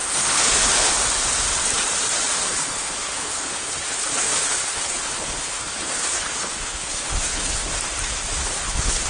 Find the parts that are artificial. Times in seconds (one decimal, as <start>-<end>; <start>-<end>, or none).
0.0-0.9; 2.5-7.7; 8.4-9.1